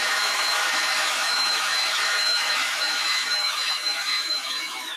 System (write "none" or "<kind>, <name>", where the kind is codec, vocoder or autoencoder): autoencoder, DAC-VAE